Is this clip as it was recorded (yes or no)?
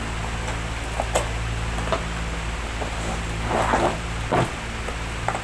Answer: yes